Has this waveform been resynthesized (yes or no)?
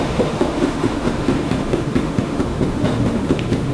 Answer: yes